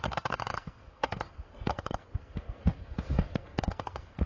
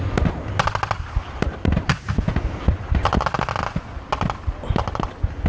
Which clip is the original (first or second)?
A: second